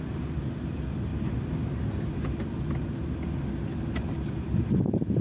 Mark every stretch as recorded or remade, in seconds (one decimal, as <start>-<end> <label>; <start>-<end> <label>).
0.0-3.7 recorded; 3.7-4.3 remade; 4.3-5.2 recorded